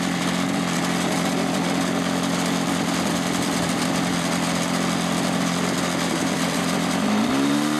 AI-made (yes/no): no